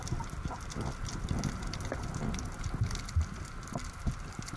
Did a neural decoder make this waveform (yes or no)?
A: no